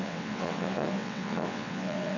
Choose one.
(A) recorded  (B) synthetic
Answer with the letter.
B